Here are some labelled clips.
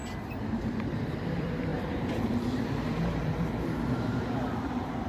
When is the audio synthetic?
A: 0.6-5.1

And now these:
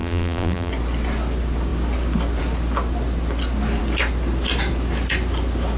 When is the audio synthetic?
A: 0.0-0.7

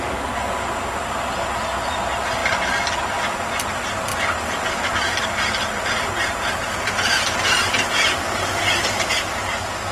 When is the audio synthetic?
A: 4.1-9.1